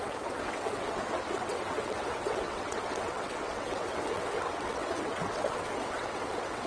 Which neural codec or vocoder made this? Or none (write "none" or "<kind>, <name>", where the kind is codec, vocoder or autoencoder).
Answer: vocoder, WaveNeXt